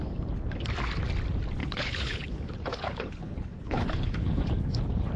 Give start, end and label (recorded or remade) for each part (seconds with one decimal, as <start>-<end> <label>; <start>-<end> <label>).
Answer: 0.0-1.6 recorded; 1.6-4.5 remade; 4.5-5.2 recorded